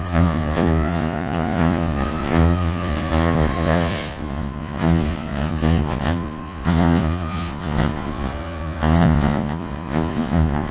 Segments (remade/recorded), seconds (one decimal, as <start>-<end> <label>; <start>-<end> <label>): 0.0-10.7 remade